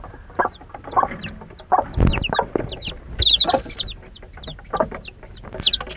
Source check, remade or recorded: recorded